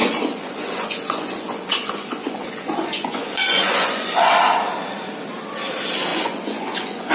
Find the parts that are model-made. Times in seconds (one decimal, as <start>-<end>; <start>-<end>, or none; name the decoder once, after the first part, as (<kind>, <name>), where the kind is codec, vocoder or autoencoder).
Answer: 0.0-4.3 (vocoder, Vocos); 6.1-7.1